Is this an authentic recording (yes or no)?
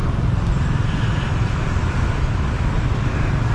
yes